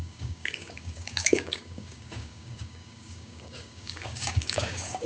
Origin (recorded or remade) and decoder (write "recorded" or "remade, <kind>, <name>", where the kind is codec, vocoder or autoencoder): remade, codec, DAC